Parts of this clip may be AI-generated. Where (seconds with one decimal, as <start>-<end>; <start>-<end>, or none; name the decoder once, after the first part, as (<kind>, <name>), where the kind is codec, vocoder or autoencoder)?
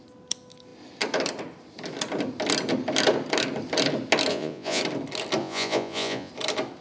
4.3-4.8 (vocoder, Vocos); 5.4-6.3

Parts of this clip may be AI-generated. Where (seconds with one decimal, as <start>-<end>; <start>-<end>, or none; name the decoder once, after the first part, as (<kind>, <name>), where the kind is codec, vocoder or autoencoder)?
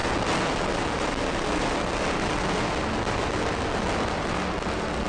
none